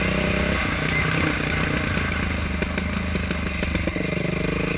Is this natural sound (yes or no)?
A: yes